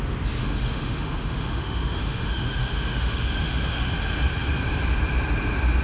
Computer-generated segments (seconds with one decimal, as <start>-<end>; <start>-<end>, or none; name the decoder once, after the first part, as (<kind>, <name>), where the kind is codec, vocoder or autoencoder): 0.4-3.9 (autoencoder, DAC-VAE)